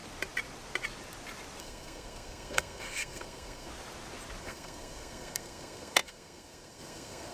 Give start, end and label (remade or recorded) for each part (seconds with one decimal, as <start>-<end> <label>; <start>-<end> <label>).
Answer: 0.0-1.6 recorded; 1.6-3.7 remade; 3.7-4.4 recorded; 4.4-7.3 remade